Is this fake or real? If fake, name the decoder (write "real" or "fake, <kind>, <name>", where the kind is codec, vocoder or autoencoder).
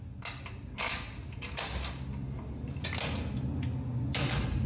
real